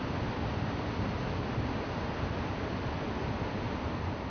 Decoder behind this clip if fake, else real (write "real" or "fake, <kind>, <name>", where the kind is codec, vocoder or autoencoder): real